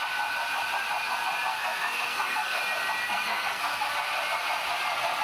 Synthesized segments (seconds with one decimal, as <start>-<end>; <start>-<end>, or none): 1.5-2.6; 3.0-3.9